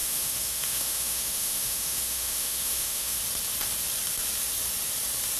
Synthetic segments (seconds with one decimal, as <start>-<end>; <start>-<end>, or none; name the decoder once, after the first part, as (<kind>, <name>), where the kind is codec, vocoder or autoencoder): 0.0-3.2 (autoencoder, DAC-VAE)